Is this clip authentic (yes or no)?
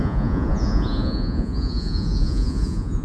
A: no